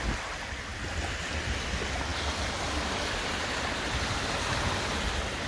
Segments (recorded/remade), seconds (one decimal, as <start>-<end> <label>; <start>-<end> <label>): 0.0-5.5 recorded